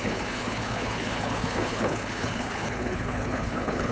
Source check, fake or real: fake